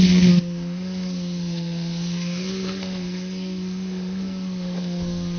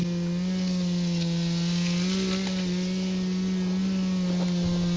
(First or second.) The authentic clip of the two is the second